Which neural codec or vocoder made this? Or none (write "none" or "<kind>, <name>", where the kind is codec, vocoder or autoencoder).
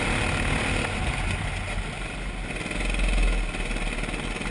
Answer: none